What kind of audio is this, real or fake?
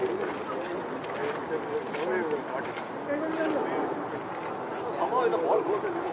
real